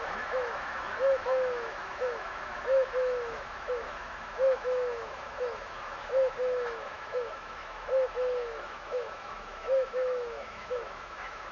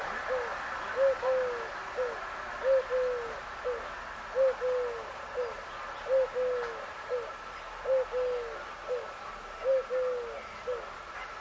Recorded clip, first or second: second